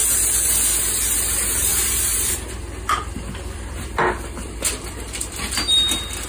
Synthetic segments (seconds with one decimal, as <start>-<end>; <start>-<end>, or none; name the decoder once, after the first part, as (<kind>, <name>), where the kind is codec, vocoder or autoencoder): 1.7-5.5 (vocoder, BigVGAN v2)